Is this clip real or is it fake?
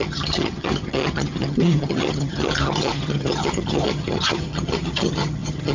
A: fake